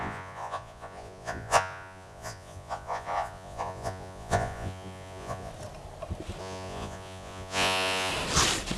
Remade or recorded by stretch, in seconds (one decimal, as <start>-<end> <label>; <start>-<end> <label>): 0.0-5.5 remade; 5.5-6.4 recorded; 6.4-8.1 remade; 8.1-8.8 recorded